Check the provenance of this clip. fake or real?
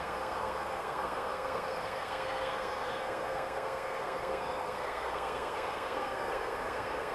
fake